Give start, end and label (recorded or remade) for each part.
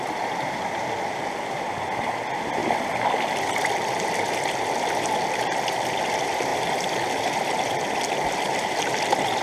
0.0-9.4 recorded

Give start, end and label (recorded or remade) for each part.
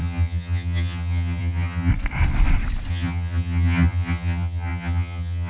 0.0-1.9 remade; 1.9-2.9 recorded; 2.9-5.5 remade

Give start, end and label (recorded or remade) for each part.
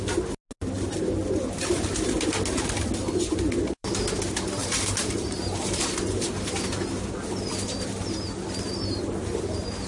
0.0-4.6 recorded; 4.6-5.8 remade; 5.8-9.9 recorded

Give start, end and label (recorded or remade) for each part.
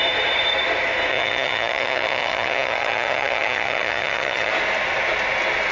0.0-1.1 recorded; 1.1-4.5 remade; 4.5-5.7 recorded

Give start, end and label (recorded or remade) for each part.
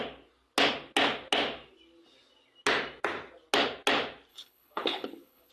0.0-4.3 recorded; 4.3-5.5 remade